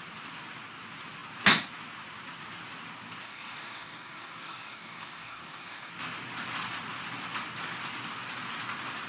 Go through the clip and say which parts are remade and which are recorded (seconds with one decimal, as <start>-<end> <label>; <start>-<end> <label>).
0.0-3.2 recorded; 3.2-5.9 remade; 5.9-9.1 recorded